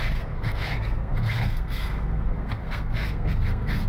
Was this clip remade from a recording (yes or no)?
yes